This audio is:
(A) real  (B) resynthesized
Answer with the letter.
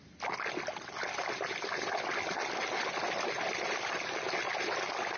A